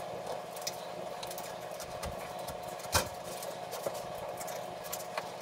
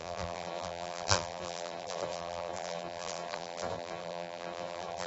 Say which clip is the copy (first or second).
second